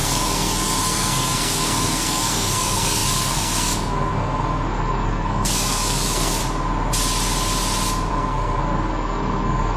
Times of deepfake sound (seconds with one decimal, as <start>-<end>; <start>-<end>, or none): 0.0-6.4; 8.1-9.8